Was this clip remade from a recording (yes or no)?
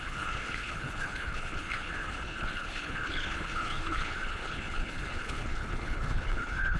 yes